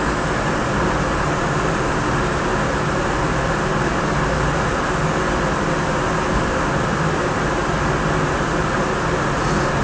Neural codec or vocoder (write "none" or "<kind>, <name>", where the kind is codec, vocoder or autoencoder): none